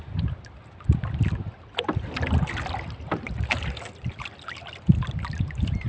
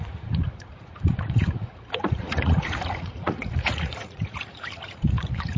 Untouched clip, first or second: first